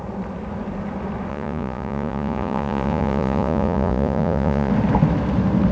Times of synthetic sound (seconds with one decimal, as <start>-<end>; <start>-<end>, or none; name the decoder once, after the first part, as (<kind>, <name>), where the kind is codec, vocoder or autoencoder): 1.3-4.7 (vocoder, Vocos)